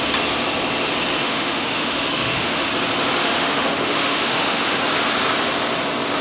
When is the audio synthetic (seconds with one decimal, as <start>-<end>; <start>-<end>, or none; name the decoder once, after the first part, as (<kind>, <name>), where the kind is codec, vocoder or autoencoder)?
1.2-2.7 (autoencoder, DAC-VAE); 3.2-4.8